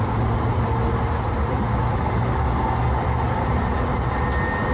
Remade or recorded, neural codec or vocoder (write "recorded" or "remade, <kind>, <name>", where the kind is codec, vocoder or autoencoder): recorded